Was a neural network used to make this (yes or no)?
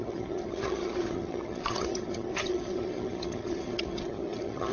yes